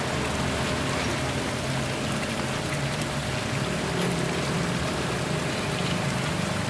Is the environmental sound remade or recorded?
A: recorded